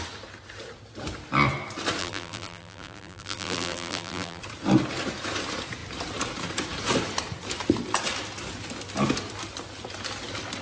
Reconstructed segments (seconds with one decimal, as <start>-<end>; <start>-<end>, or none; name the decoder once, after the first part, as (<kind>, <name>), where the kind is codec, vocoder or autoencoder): 2.0-4.4 (vocoder, BigVGAN v2)